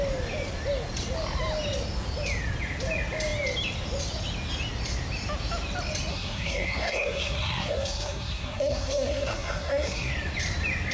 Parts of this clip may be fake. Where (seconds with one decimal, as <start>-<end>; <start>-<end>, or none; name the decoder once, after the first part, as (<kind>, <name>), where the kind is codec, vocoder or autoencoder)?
6.1-10.1 (codec, SNAC)